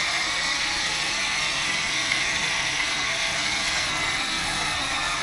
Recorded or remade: remade